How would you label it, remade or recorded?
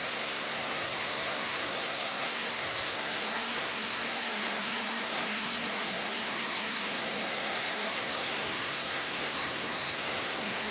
remade